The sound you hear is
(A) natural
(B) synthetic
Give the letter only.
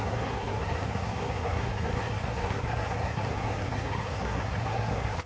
B